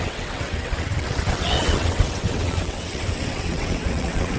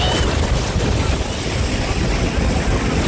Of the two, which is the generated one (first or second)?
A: first